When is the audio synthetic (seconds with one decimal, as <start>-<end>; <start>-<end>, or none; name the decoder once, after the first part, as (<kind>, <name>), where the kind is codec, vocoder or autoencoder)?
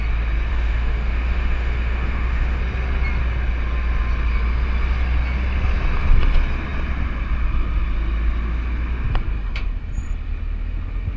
0.5-2.6 (autoencoder, DAC-VAE)